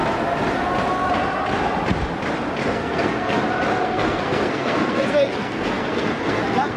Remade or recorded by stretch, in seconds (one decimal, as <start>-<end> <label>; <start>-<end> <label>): 0.0-2.6 recorded; 2.6-3.4 remade; 3.4-3.8 recorded; 3.8-6.8 remade